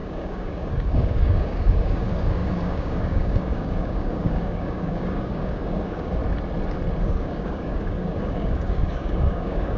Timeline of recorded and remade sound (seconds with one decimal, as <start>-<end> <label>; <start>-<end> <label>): 0.0-6.2 remade; 6.2-7.0 recorded; 7.0-9.8 remade

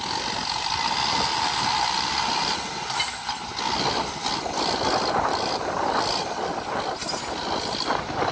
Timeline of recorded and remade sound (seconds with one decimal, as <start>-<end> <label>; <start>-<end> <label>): 0.0-8.3 recorded

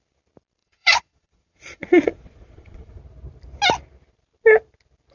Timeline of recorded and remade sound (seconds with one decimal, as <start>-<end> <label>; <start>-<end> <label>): 0.0-0.6 recorded; 0.6-3.0 remade; 3.0-5.1 recorded

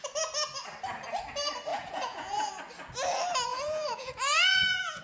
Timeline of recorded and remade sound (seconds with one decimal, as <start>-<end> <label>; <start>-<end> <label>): 0.0-1.7 recorded; 1.7-2.5 remade; 2.5-3.5 recorded; 3.5-5.0 remade

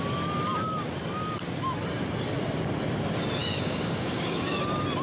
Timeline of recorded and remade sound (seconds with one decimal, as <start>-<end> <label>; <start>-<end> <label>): 0.0-3.4 recorded; 3.4-4.6 remade; 4.6-5.0 recorded

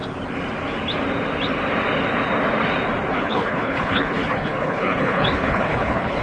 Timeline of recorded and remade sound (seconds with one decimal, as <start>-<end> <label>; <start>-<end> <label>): 0.0-3.1 recorded; 3.1-6.2 remade

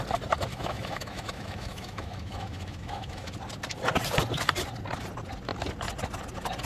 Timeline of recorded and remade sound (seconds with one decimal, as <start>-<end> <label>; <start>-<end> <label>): 0.0-0.5 recorded; 0.5-3.3 remade; 3.3-6.7 recorded

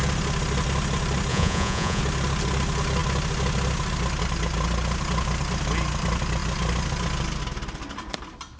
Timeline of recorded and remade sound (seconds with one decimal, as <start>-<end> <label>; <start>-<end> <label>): 0.0-1.3 recorded; 1.3-2.0 remade; 2.0-8.6 recorded